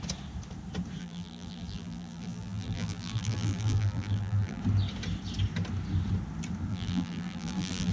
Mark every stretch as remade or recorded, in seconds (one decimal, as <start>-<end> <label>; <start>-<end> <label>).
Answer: 0.0-1.0 recorded; 1.0-4.6 remade; 4.6-6.7 recorded; 6.7-7.9 remade